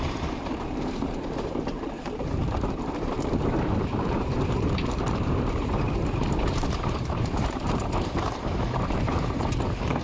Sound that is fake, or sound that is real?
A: fake